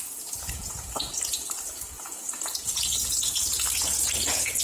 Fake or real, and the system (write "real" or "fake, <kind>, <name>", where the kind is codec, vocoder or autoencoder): fake, vocoder, Vocos